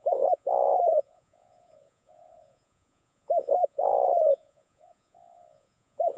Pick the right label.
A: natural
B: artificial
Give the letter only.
B